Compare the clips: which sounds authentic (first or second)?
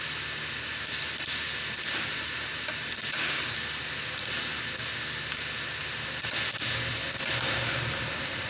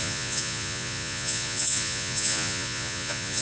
first